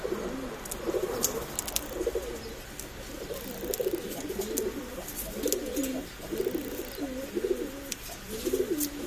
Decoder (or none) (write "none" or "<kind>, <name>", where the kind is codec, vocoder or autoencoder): none